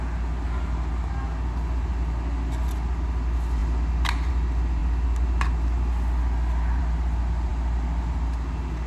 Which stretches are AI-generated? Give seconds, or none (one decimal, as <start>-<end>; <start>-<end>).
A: none